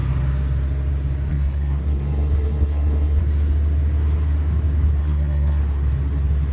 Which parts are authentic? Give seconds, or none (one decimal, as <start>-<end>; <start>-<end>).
0.0-1.3; 3.2-5.0; 5.6-6.5